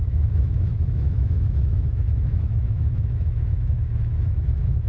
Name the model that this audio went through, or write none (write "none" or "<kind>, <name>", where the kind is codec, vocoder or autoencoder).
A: autoencoder, DAC-VAE